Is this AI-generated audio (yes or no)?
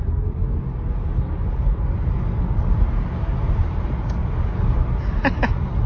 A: no